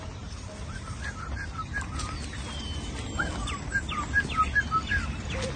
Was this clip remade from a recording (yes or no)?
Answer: no